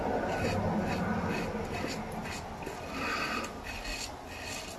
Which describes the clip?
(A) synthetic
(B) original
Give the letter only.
B